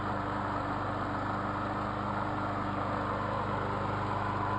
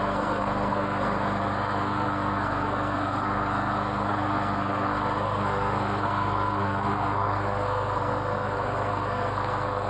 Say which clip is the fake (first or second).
second